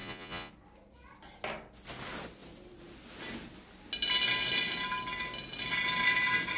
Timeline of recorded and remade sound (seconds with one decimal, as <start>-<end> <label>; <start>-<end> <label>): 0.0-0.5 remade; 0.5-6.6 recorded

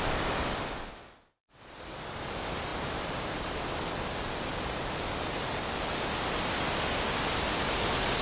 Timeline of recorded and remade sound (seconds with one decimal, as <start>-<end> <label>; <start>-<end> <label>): 0.0-8.2 recorded

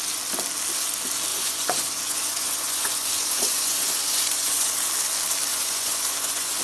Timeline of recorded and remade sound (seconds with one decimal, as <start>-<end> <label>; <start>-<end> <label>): 0.0-1.3 recorded; 1.3-4.7 remade; 4.7-5.5 recorded; 5.5-6.6 remade

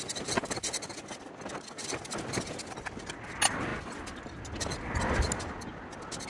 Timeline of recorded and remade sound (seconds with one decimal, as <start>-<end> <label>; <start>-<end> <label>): 0.0-6.3 recorded

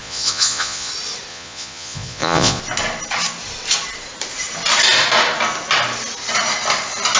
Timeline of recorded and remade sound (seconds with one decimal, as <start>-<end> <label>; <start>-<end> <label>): 0.0-0.9 remade; 0.9-1.3 recorded; 1.3-2.6 remade; 2.6-7.2 recorded

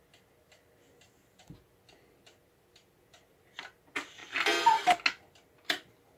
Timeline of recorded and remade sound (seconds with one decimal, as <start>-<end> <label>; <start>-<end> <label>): 0.0-6.2 recorded

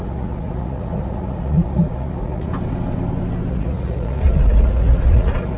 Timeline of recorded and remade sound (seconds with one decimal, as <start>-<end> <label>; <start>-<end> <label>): 0.0-2.5 remade; 2.5-3.5 recorded; 3.5-5.6 remade

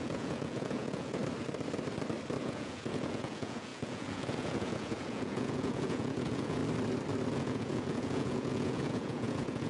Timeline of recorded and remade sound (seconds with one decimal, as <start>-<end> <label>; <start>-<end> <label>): 0.0-1.2 remade; 1.2-2.4 recorded; 2.4-6.6 remade; 6.6-7.3 recorded; 7.3-9.7 remade